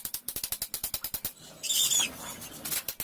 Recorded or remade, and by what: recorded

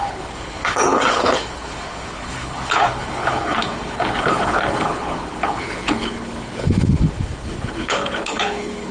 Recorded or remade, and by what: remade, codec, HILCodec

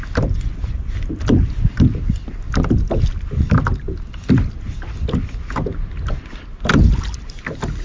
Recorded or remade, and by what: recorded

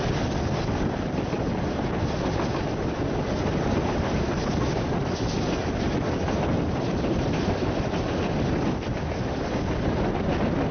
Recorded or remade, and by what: recorded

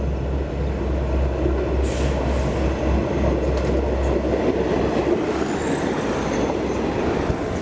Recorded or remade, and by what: recorded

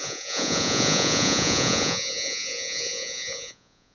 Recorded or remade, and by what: remade, vocoder, Vocos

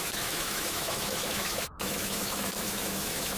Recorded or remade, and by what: remade, autoencoder, DAC-VAE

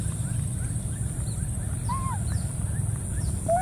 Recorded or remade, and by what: recorded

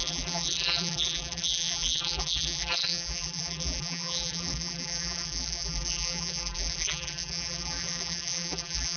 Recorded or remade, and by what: remade, vocoder, BigVGAN v2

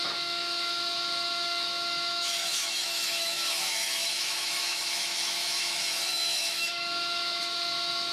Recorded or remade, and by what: remade, autoencoder, DAC-VAE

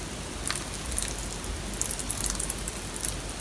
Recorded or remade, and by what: recorded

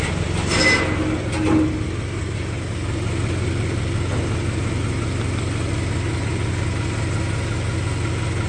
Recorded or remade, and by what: recorded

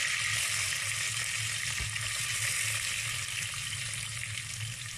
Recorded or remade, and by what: recorded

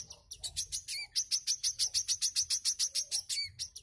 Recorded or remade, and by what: recorded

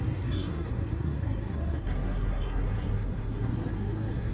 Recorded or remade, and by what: remade, codec, SNAC